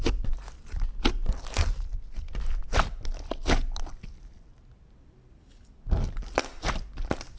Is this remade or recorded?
recorded